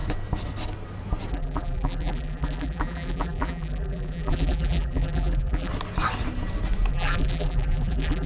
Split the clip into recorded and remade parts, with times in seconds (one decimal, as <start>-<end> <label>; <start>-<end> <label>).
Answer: 0.0-1.3 recorded; 1.3-5.7 remade; 5.7-6.9 recorded; 6.9-8.3 remade

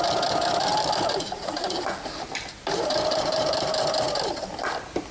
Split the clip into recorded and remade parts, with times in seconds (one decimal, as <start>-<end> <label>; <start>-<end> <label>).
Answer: 0.0-0.7 recorded; 0.7-3.8 remade; 3.8-5.1 recorded

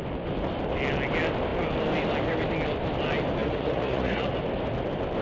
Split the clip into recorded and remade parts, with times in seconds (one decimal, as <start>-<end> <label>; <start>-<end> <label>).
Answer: 0.0-3.4 recorded; 3.4-4.4 remade; 4.4-5.2 recorded

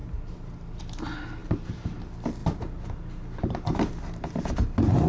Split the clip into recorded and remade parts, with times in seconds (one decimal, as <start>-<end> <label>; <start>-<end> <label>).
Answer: 0.0-0.8 remade; 0.8-1.4 recorded; 1.4-1.9 remade; 1.9-2.4 recorded; 2.4-5.1 remade

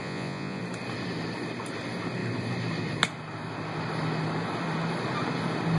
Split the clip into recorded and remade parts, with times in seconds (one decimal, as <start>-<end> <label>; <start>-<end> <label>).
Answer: 0.0-0.6 remade; 0.6-5.8 recorded

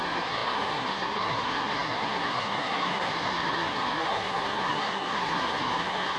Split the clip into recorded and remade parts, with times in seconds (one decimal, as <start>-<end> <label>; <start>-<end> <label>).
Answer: 0.0-6.2 remade